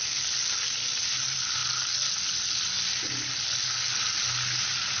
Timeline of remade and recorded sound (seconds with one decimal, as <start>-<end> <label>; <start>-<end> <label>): 0.0-5.0 recorded